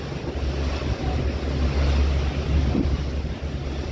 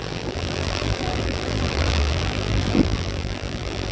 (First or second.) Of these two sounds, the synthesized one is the second